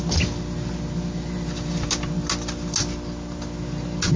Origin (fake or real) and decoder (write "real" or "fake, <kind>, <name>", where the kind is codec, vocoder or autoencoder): real